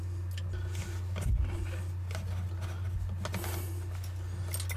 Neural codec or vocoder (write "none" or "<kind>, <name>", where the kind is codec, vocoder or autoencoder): none